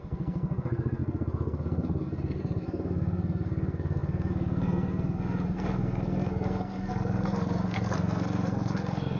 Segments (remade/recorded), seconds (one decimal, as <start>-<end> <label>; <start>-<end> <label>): 0.0-9.2 remade